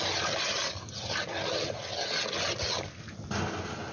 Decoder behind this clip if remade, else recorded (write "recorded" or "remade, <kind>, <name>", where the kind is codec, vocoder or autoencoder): recorded